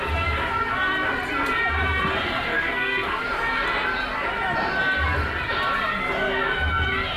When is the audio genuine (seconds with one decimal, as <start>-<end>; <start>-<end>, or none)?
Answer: 0.0-2.5; 3.3-7.2